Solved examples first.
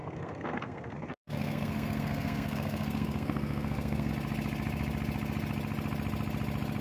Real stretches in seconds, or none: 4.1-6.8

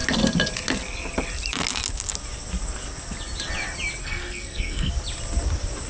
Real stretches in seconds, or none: 0.0-4.0; 4.9-5.9

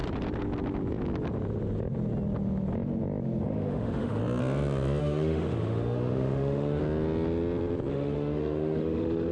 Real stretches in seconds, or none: 0.0-3.4; 4.2-5.0; 6.8-7.9

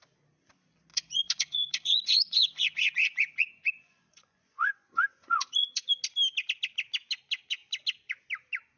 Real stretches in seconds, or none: 0.0-0.9; 5.9-8.8

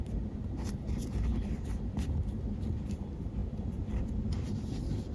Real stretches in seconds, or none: 0.0-5.1

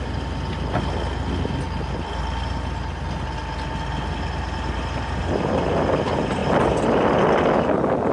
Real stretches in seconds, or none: 0.0-8.1